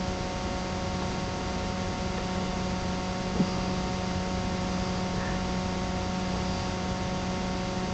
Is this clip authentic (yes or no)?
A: yes